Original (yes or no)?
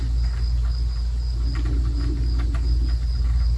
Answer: yes